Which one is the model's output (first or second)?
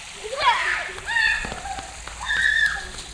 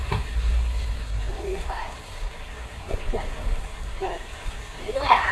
second